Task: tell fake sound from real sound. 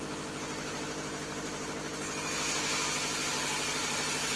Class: real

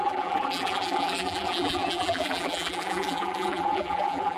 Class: fake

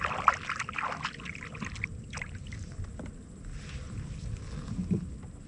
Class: real